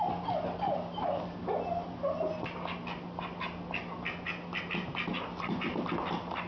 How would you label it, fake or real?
real